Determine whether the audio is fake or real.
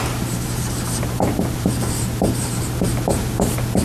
fake